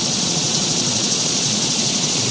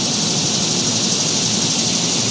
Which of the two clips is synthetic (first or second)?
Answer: first